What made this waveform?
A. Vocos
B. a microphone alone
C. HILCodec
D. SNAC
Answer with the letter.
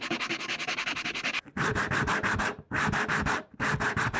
B